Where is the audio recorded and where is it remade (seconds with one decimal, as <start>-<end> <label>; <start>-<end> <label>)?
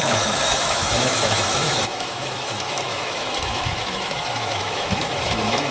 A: 0.0-5.7 remade